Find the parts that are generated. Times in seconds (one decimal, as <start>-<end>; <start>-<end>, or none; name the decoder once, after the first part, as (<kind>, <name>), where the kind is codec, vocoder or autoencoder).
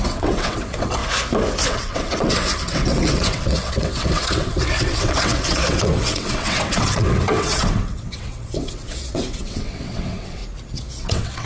0.0-1.0 (vocoder, WaveNeXt); 1.7-10.4; 11.0-11.5